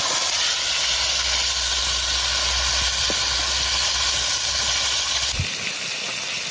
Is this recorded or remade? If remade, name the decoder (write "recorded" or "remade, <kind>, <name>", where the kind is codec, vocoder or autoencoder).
recorded